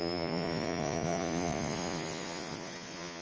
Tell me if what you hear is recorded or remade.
remade